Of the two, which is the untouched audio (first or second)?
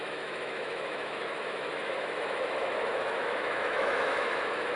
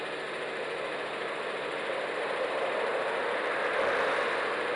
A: second